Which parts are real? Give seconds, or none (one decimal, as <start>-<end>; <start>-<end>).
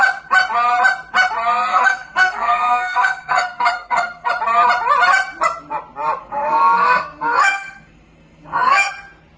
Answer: 0.0-1.7; 4.3-6.2; 8.9-9.4